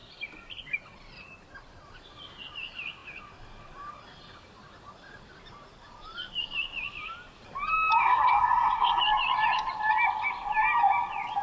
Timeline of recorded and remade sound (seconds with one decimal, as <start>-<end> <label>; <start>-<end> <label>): 0.0-8.0 recorded; 8.0-9.0 remade; 9.0-11.4 recorded